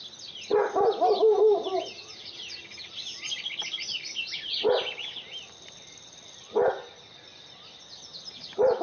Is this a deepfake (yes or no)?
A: no